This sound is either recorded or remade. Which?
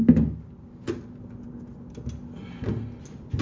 recorded